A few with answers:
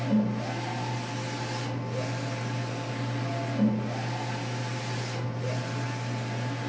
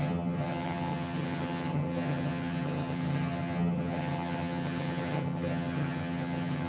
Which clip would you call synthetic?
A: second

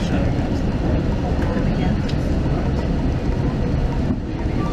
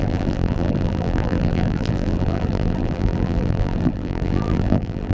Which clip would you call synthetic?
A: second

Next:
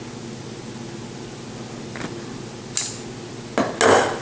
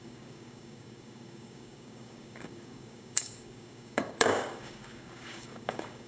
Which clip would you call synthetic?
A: second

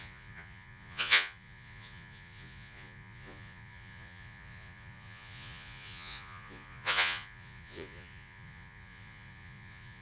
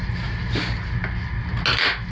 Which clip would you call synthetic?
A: first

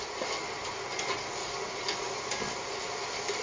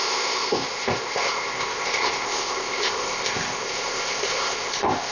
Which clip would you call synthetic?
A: second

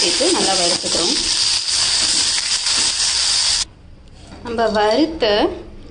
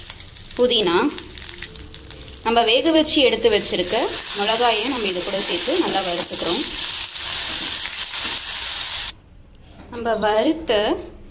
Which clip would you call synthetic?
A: second